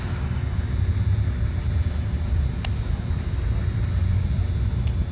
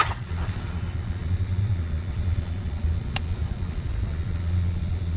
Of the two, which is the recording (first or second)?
first